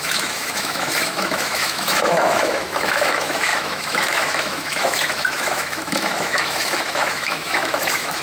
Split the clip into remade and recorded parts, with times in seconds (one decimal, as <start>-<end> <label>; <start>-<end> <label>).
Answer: 0.0-8.2 remade